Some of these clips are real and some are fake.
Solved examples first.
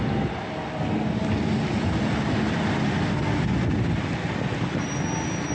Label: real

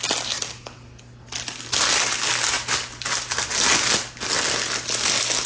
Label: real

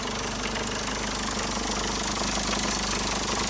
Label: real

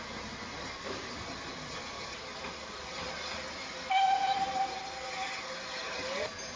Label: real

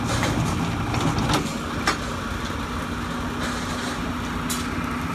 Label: real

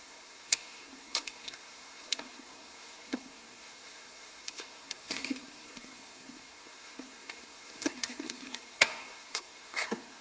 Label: fake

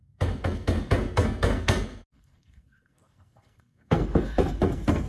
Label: fake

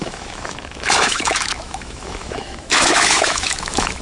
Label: fake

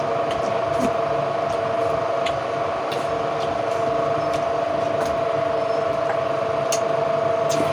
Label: real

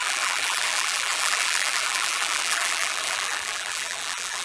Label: fake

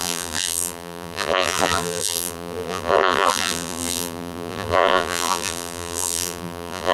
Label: fake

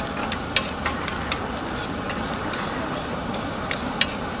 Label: real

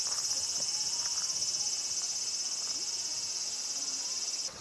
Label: real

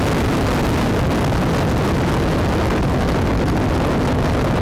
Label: real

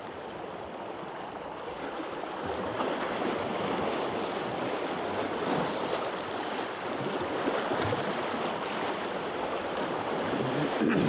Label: real